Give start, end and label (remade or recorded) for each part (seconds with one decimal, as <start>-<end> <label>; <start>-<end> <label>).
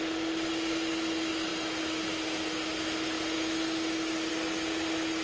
0.0-5.2 recorded